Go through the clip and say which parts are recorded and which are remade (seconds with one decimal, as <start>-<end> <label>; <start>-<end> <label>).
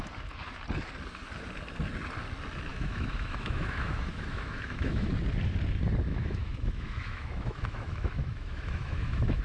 0.0-2.7 recorded; 2.7-5.1 remade; 5.1-6.1 recorded; 6.1-9.4 remade